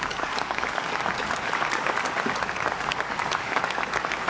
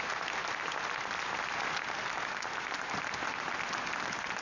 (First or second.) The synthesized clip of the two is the first